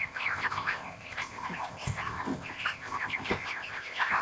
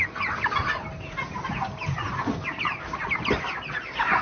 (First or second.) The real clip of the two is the second